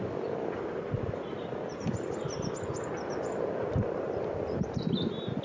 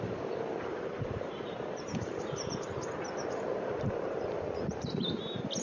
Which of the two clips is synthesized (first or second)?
second